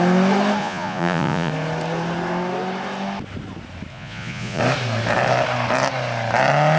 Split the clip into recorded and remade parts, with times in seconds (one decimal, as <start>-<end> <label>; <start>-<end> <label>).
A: 0.0-0.6 recorded; 0.6-1.5 remade; 1.5-3.9 recorded; 3.9-4.6 remade; 4.6-6.8 recorded